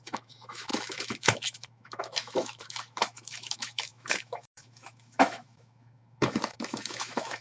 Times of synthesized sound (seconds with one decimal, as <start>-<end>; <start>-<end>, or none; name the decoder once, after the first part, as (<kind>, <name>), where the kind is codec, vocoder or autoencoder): 0.0-7.4 (autoencoder, DAC-VAE)